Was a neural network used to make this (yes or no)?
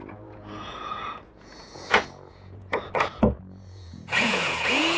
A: yes